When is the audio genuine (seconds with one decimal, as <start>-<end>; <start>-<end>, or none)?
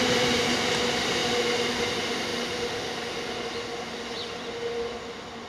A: 0.0-5.5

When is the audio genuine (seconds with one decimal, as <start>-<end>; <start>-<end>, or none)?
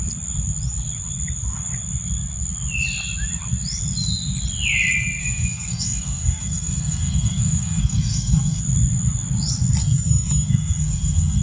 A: 0.0-5.2; 8.6-9.8